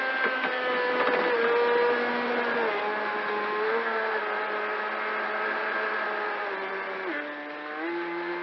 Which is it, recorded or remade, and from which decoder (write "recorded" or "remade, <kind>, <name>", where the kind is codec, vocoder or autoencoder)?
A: recorded